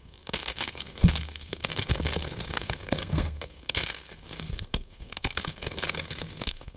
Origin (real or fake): fake